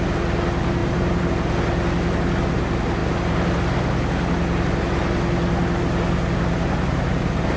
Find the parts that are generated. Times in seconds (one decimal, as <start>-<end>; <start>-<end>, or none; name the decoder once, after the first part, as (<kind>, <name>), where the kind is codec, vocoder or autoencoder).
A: 0.8-1.3 (vocoder, BigVGAN v2)